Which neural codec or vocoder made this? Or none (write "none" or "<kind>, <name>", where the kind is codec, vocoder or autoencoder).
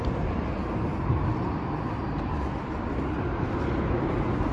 none